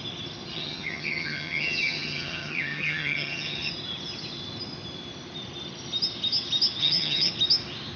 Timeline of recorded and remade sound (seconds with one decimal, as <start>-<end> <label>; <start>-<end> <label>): 0.0-0.5 recorded; 0.5-3.7 remade; 3.7-6.8 recorded; 6.8-7.3 remade; 7.3-8.0 recorded